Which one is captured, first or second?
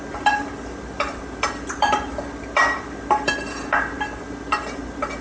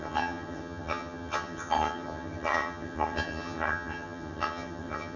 first